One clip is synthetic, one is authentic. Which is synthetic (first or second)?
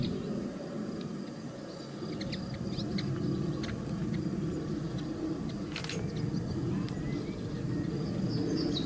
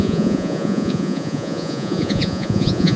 second